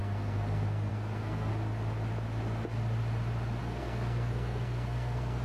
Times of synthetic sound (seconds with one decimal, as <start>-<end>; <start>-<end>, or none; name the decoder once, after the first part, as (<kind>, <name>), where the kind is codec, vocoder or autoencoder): 0.0-1.5 (codec, SNAC); 3.6-5.4